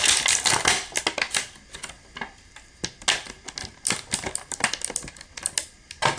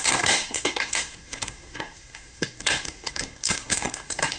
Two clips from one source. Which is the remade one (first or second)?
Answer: second